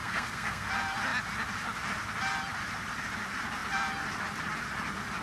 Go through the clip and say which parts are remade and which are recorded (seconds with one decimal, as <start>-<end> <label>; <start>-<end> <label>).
0.0-0.7 remade; 0.7-5.2 recorded